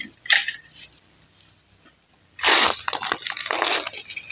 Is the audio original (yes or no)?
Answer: yes